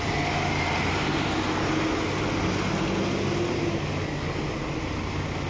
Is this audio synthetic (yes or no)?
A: no